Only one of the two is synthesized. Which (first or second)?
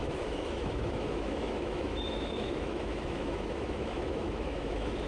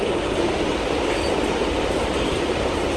first